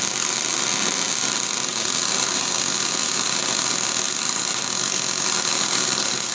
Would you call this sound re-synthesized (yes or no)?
no